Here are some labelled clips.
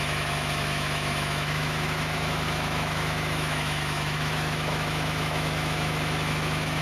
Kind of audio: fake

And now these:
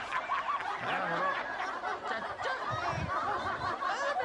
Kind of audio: real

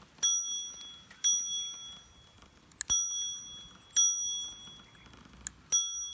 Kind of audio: real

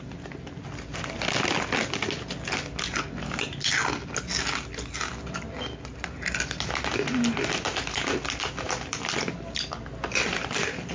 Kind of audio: real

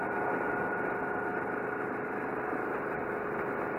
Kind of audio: real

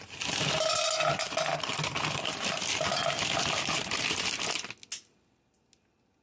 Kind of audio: real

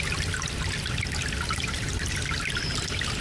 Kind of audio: real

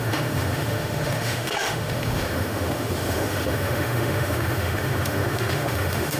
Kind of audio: fake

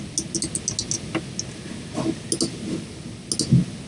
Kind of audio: real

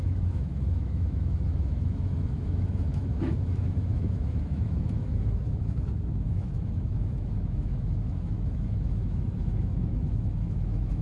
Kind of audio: fake